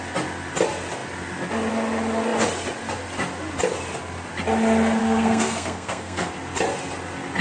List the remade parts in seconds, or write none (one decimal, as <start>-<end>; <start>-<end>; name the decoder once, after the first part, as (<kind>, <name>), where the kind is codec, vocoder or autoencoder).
5.0-6.3 (codec, SNAC)